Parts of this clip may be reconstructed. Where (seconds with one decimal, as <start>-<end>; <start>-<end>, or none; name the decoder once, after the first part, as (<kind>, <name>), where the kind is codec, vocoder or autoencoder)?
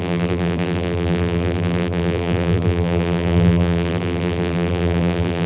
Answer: 0.0-5.5 (vocoder, BigVGAN v2)